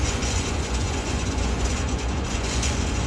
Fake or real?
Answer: fake